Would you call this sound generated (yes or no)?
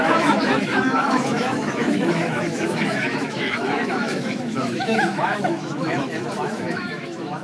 yes